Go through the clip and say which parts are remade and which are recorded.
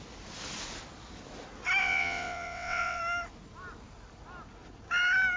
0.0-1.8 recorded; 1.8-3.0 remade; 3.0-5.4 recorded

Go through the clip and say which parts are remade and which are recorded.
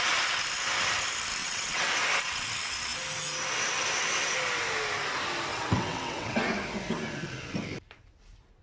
0.0-1.4 recorded; 1.4-1.9 remade; 1.9-5.5 recorded; 5.5-6.4 remade; 6.4-8.6 recorded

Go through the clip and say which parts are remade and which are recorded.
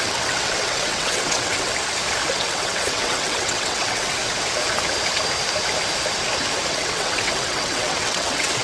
0.0-1.7 remade; 1.7-2.3 recorded; 2.3-4.2 remade; 4.2-6.7 recorded; 6.7-8.6 remade